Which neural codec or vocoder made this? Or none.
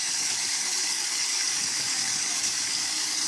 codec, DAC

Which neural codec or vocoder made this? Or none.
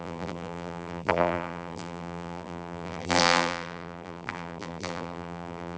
vocoder, BigVGAN v2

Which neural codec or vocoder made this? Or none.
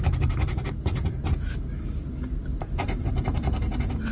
none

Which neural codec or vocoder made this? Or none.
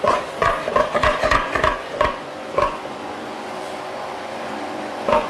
vocoder, Vocos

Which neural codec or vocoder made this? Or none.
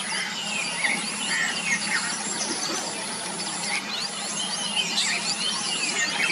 none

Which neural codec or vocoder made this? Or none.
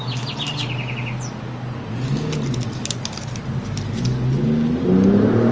none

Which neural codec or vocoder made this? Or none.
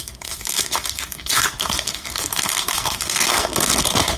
codec, SNAC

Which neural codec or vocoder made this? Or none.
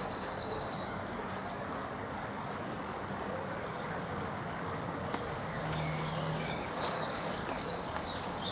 codec, DAC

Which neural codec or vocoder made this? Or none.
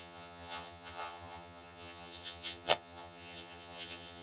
vocoder, HiFi-GAN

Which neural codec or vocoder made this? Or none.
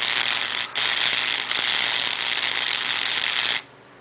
vocoder, BigVGAN v2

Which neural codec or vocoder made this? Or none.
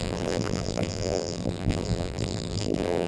vocoder, BigVGAN v2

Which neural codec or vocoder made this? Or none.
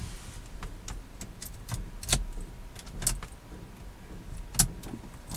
none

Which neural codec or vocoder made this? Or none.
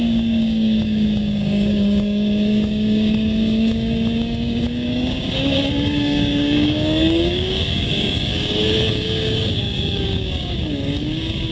codec, DAC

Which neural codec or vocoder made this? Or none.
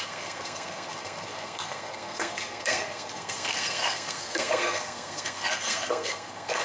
codec, SNAC